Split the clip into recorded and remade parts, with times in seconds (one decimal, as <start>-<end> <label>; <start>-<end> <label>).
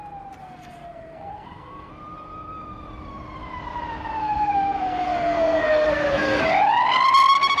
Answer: 0.0-0.4 recorded; 0.4-1.9 remade; 1.9-4.2 recorded; 4.2-6.4 remade; 6.4-7.6 recorded